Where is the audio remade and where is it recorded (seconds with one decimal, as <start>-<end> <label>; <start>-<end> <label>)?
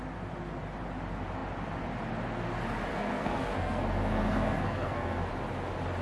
0.0-2.9 recorded; 2.9-5.3 remade; 5.3-6.0 recorded